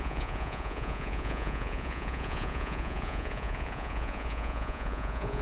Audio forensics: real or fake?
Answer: fake